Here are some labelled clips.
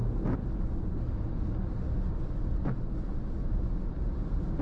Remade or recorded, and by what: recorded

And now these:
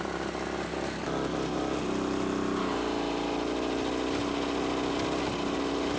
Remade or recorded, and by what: recorded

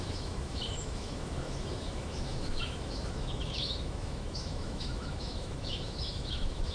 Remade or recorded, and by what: remade, autoencoder, DAC-VAE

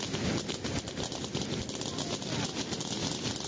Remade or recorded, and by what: recorded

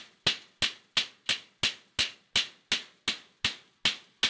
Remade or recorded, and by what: recorded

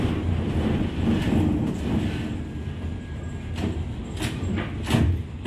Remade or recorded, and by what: recorded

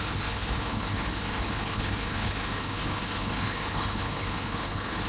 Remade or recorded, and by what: remade, codec, HILCodec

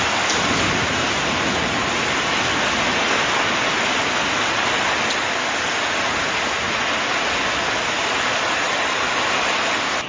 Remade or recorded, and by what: recorded